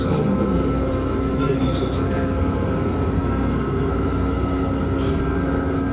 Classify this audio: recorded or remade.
remade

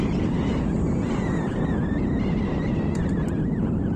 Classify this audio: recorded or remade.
recorded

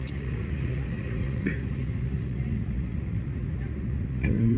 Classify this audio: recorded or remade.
remade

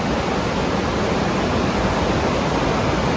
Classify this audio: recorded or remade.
recorded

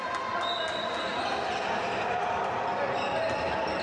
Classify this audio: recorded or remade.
recorded